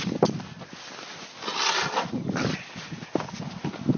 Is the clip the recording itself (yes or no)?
yes